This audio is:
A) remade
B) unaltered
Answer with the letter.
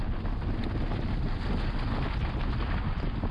B